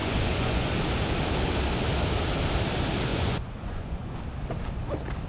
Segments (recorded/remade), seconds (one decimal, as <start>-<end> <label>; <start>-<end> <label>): 0.0-0.7 remade; 0.7-3.1 recorded; 3.1-4.2 remade; 4.2-5.3 recorded